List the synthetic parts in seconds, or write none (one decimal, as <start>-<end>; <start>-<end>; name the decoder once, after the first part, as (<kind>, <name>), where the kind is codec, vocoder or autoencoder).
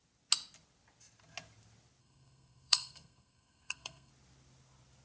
2.0-4.1 (codec, SNAC)